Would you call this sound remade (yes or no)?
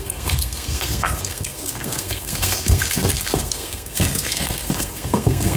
yes